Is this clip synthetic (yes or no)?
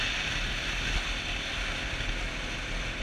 no